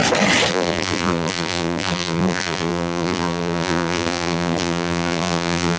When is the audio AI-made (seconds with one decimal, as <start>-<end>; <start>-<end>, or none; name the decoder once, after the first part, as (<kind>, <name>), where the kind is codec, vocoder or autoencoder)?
0.5-5.8 (vocoder, BigVGAN v2)